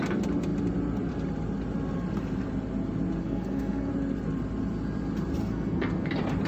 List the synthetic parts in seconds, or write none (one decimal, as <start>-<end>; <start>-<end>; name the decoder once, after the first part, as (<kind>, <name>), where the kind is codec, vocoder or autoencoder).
3.2-3.9 (codec, SNAC); 5.4-6.1